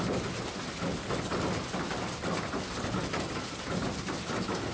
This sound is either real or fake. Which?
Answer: real